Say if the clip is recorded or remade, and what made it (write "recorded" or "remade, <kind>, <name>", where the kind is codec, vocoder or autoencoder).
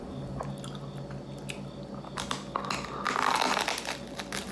recorded